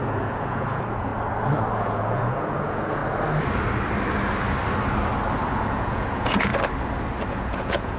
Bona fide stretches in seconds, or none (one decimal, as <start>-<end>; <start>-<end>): 1.1-1.8; 3.0-5.7; 6.5-7.3

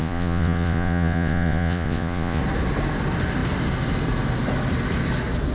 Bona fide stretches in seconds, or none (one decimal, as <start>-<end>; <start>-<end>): 2.4-5.5

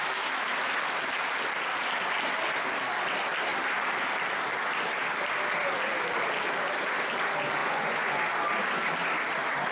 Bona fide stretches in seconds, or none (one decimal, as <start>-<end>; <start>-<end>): 0.0-7.6; 8.2-9.7